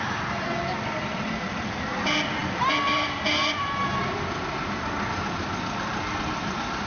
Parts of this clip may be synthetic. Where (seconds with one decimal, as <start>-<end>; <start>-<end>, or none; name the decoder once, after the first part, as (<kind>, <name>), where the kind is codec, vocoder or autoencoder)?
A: none